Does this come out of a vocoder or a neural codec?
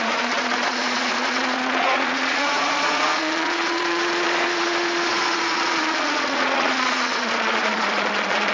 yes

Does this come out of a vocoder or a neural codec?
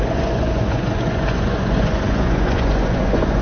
yes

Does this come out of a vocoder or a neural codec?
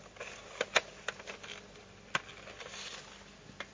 no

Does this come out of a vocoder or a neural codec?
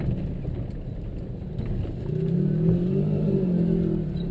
no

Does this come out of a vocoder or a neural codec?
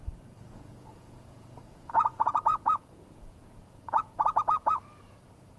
yes